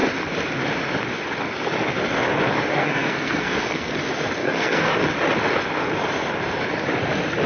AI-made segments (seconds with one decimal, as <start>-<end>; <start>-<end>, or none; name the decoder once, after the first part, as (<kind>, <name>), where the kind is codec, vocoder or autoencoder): 2.7-3.9 (codec, SNAC); 4.4-4.9